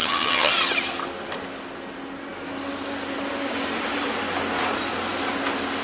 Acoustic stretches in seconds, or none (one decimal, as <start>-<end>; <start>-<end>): 0.5-5.8